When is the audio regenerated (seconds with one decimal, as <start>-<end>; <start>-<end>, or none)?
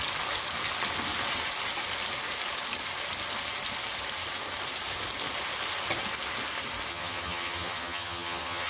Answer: 6.9-8.7